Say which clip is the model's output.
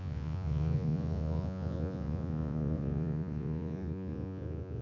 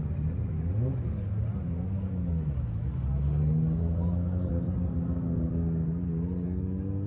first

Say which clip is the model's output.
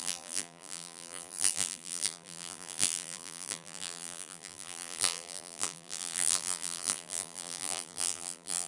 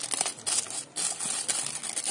first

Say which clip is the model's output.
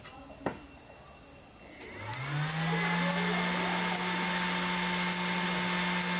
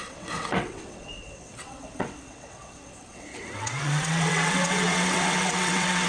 second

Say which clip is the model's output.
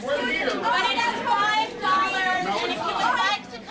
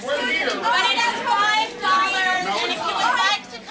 first